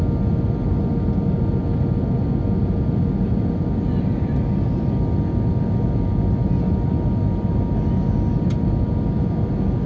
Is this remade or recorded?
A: recorded